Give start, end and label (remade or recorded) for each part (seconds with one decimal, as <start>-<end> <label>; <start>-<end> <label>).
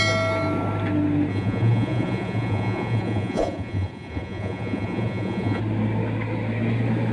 0.0-1.3 recorded; 1.3-5.6 remade; 5.6-7.1 recorded